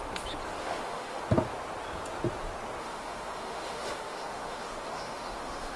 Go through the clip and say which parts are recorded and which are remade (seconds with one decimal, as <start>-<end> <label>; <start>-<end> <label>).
0.0-0.6 recorded; 0.6-1.2 remade; 1.2-2.8 recorded; 2.8-5.8 remade